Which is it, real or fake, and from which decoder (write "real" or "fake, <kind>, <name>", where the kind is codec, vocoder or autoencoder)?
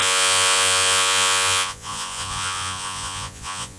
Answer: fake, vocoder, Vocos